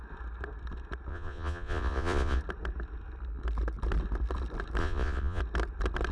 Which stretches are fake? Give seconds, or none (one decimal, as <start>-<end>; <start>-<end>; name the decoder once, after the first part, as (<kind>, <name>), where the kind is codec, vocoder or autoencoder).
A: 1.1-2.4 (vocoder, Vocos); 4.8-5.4